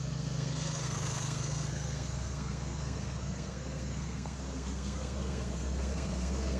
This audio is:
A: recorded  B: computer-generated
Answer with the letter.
B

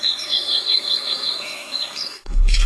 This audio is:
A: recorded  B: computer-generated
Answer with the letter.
B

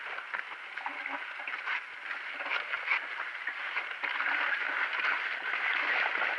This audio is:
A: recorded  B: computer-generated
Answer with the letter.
A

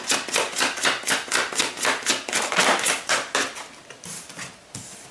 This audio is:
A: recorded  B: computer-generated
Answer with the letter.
A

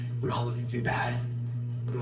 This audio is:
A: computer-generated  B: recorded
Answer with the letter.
A